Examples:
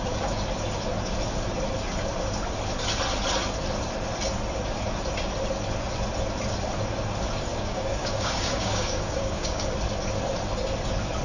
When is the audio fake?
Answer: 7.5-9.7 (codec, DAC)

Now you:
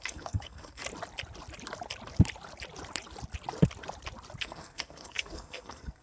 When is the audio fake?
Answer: 0.0-0.8 (codec, SNAC); 4.4-6.0

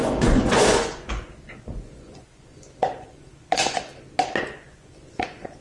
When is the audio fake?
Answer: 0.0-3.9 (vocoder, Vocos); 4.4-5.6